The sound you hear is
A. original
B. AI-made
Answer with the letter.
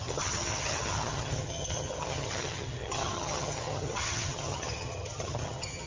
B